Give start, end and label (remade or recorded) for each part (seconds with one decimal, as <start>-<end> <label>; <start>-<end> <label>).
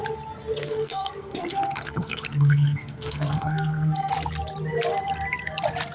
0.0-0.6 recorded; 0.6-4.1 remade; 4.1-5.9 recorded